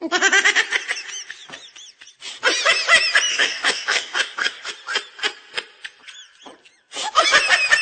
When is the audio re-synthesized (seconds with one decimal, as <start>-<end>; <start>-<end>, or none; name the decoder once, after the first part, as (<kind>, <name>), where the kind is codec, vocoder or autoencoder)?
3.3-4.7 (codec, DAC)